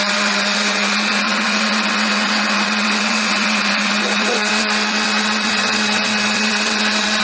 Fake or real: fake